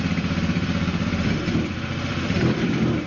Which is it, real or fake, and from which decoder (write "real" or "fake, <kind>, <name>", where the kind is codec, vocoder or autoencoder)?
fake, vocoder, BigVGAN v2